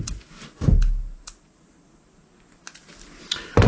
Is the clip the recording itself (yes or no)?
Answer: yes